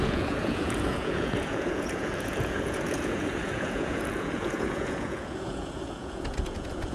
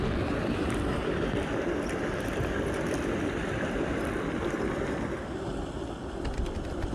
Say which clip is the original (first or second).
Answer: second